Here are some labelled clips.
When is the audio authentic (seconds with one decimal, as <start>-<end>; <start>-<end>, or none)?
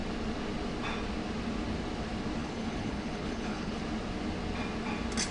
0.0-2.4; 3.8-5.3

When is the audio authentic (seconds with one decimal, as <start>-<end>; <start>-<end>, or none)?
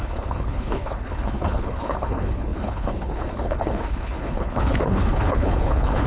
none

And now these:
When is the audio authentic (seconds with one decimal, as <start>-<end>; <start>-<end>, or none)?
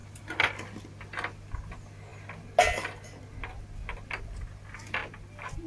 0.0-5.7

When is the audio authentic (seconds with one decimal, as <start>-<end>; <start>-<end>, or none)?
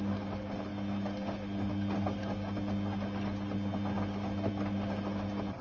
0.0-5.6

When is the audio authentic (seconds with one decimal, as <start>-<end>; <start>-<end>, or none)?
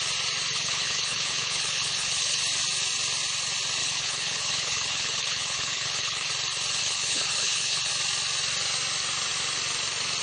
0.0-0.5; 2.4-3.8; 6.3-6.8; 7.9-10.2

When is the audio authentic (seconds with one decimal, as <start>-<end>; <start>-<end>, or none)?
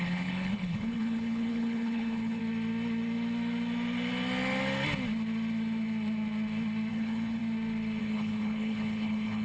2.4-6.9; 7.4-8.0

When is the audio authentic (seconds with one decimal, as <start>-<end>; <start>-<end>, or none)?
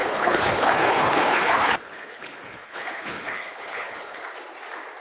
4.2-5.0